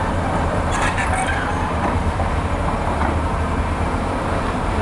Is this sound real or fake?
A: fake